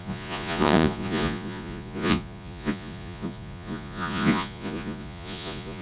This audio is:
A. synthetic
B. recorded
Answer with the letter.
A